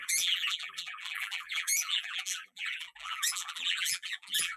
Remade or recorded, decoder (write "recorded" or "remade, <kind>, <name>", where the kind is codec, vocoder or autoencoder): remade, vocoder, BigVGAN v2